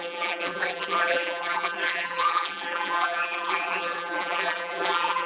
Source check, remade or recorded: remade